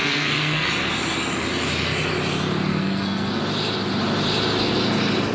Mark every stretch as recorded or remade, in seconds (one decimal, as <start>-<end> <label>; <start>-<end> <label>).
0.0-0.7 remade; 0.7-2.7 recorded; 2.7-3.4 remade; 3.4-5.3 recorded